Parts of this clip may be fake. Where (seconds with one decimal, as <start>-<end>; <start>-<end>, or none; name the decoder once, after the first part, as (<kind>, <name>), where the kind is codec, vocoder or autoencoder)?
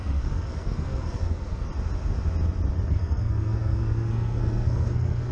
0.0-1.7 (codec, SNAC); 2.9-5.3